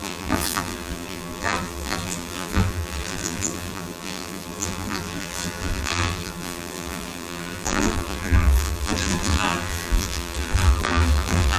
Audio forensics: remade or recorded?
remade